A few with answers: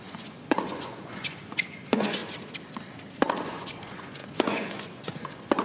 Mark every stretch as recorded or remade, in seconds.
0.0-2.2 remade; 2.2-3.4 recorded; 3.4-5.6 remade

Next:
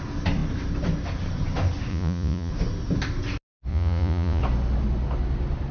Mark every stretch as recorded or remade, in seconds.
0.0-1.9 recorded; 1.9-2.5 remade; 2.5-3.7 recorded; 3.7-4.4 remade; 4.4-5.7 recorded

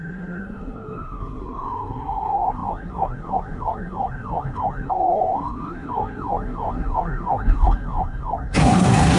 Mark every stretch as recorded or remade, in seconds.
0.0-9.2 remade

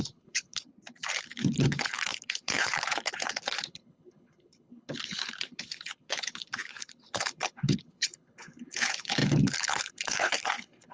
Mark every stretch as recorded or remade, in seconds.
0.0-0.7 remade; 0.7-1.2 recorded; 1.2-10.9 remade

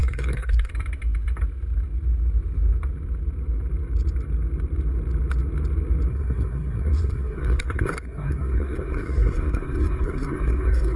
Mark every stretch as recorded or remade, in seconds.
0.0-0.7 remade; 0.7-6.1 recorded; 6.1-11.0 remade

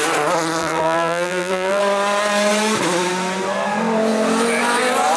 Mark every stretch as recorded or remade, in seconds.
0.0-0.6 recorded; 0.6-1.8 remade; 1.8-5.2 recorded